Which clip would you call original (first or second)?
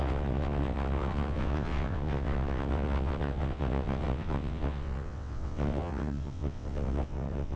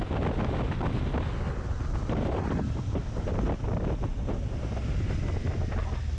second